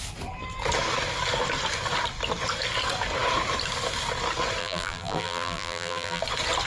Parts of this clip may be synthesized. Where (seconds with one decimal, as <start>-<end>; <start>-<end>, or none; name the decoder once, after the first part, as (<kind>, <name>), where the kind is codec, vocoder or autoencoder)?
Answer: 4.6-6.2 (vocoder, BigVGAN v2)